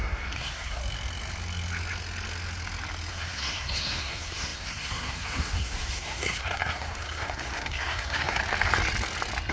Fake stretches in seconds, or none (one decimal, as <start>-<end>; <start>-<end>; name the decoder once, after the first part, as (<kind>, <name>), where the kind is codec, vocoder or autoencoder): 0.0-0.8 (codec, SNAC); 3.1-8.4

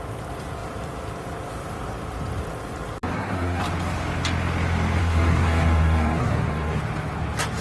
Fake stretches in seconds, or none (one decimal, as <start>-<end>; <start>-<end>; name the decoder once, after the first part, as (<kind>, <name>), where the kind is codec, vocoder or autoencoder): 3.1-3.6 (codec, SNAC); 5.0-6.8